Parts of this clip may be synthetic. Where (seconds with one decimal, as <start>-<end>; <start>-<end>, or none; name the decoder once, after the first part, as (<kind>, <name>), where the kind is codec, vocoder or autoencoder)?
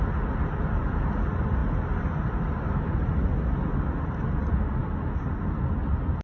none